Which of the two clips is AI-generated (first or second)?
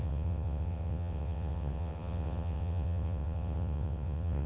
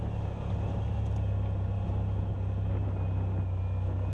first